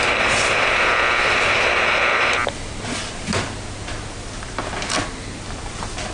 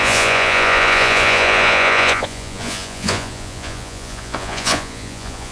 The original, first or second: first